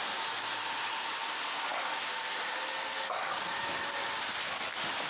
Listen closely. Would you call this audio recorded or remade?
recorded